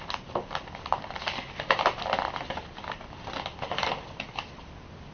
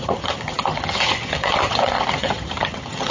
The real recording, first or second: first